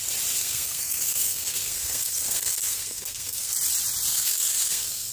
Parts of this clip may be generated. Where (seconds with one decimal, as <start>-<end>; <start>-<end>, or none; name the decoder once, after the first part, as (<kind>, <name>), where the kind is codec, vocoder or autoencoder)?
0.4-3.5 (codec, SNAC); 4.1-5.1